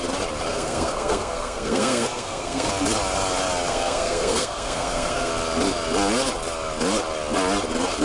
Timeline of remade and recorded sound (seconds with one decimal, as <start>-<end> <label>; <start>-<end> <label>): 0.0-0.5 recorded; 0.5-2.7 remade; 2.7-3.7 recorded; 3.7-5.3 remade; 5.3-8.0 recorded